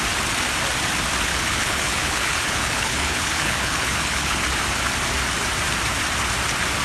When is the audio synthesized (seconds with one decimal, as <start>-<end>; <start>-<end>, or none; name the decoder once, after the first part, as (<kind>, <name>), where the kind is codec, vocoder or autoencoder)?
1.3-4.4 (codec, HILCodec)